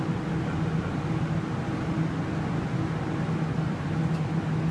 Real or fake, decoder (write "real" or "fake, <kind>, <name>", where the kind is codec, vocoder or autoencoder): real